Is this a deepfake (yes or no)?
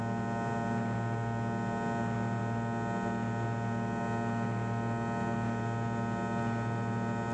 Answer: no